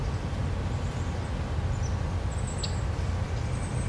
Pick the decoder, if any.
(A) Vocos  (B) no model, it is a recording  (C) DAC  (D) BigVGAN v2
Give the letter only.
B